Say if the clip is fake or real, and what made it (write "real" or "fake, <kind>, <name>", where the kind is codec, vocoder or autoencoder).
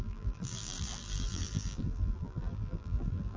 fake, vocoder, BigVGAN v2